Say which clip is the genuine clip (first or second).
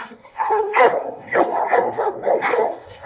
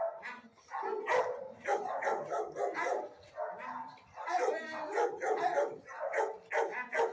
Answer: second